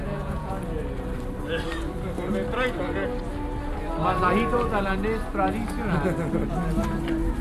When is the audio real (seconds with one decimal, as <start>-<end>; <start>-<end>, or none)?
0.5-7.4